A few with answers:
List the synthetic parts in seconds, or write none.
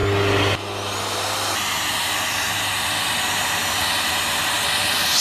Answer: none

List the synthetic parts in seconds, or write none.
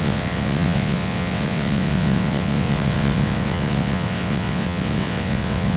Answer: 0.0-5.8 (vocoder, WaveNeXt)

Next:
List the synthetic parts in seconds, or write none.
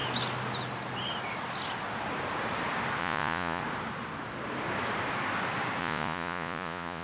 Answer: 3.0-3.6 (vocoder, Vocos); 5.8-7.0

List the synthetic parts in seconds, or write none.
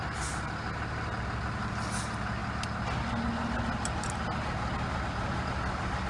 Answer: none